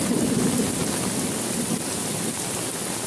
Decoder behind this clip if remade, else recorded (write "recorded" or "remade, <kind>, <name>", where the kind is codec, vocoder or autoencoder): recorded